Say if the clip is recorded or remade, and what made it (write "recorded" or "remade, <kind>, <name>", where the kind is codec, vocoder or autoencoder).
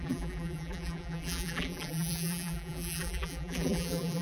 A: remade, vocoder, BigVGAN v2